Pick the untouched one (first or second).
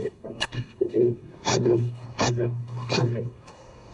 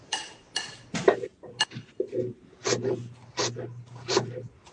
second